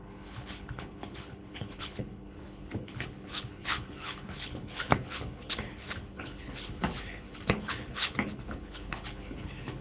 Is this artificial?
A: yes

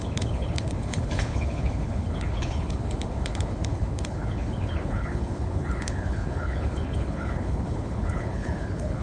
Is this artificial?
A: yes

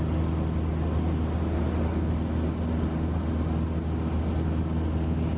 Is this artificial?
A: no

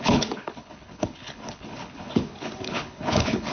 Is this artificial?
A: yes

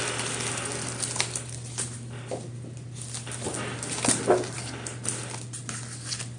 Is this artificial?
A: no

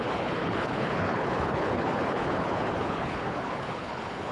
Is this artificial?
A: yes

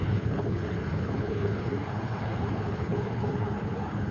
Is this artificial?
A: yes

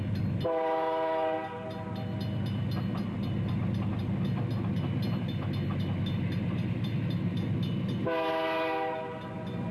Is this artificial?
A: no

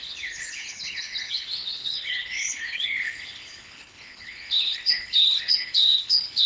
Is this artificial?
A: yes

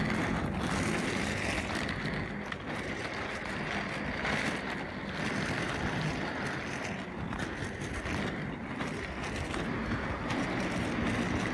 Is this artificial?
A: no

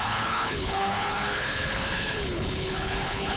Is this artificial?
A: yes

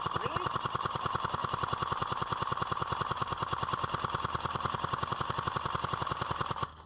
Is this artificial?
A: no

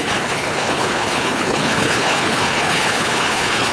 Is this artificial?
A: yes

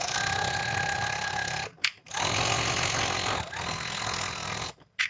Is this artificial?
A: no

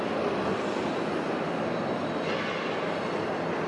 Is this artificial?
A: no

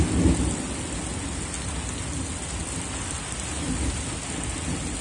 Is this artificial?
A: no